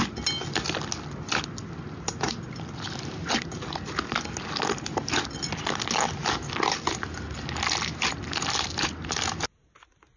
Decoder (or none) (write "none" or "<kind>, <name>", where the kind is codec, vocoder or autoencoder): none